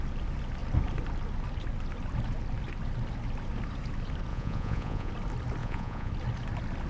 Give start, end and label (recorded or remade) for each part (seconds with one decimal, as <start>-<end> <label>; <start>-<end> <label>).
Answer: 0.0-4.3 recorded; 4.3-5.1 remade; 5.1-5.6 recorded; 5.6-6.1 remade; 6.1-6.9 recorded